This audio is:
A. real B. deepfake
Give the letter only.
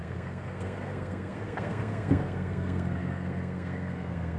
B